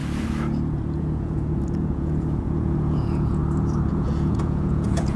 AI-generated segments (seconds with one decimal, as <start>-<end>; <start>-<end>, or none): 1.0-3.4; 3.9-5.2